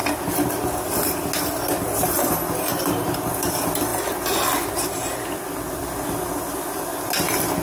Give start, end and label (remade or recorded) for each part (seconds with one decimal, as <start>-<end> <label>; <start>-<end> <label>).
0.0-7.6 recorded